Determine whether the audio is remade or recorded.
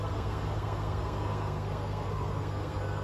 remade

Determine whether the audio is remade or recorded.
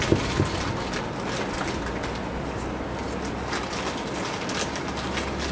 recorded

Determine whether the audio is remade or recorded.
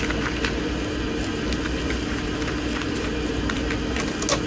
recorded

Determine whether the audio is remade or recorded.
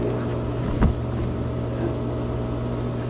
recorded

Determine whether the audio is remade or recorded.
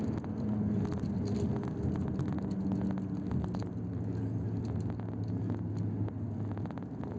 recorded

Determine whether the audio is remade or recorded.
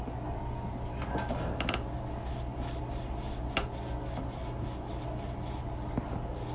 recorded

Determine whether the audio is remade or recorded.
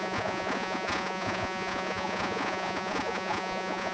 remade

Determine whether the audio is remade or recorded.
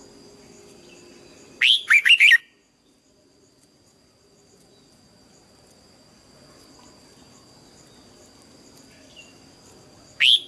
recorded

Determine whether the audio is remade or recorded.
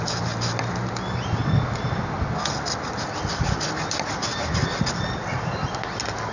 recorded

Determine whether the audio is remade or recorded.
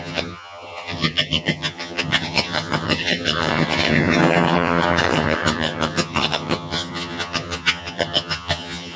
remade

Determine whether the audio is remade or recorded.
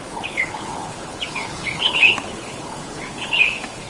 remade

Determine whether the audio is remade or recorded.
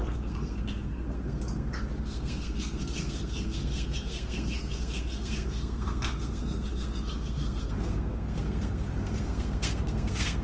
remade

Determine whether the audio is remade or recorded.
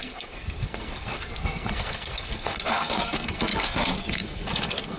remade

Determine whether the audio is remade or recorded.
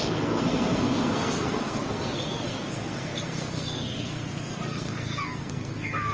remade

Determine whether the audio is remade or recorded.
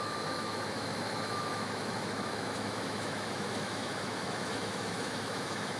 remade